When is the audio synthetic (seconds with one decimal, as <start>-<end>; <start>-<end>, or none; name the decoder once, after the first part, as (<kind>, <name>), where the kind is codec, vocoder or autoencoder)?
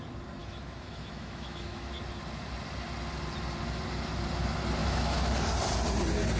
0.4-1.9 (autoencoder, DAC-VAE); 4.8-5.3